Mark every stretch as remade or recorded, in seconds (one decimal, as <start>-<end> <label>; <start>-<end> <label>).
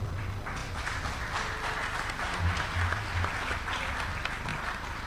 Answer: 0.0-4.5 recorded; 4.5-5.1 remade